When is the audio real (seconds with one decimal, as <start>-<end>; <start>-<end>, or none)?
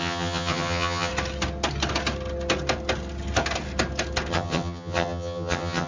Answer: 1.1-4.3